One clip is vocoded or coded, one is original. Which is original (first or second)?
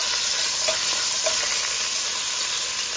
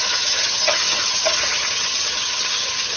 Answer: first